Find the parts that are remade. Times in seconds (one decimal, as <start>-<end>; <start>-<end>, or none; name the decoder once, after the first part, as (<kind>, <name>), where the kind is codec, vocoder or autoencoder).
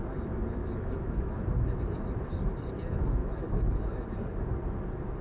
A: 0.6-1.3 (autoencoder, DAC-VAE); 3.2-3.8